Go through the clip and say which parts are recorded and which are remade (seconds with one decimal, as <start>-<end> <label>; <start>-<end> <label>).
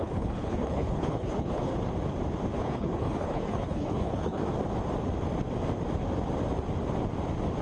0.0-1.7 remade; 1.7-2.6 recorded; 2.6-4.4 remade; 4.4-7.6 recorded